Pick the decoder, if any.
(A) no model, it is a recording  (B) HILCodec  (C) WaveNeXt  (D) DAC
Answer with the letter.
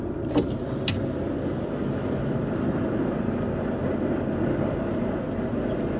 A